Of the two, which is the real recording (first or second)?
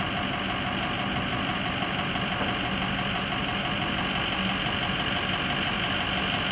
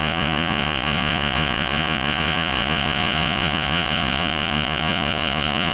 first